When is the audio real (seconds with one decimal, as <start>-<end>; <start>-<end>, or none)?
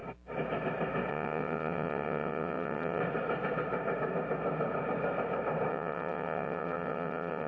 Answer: 0.0-1.1; 3.0-5.7